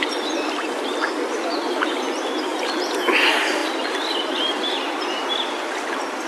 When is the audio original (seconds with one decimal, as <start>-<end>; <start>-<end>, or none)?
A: 0.0-3.6; 5.2-6.3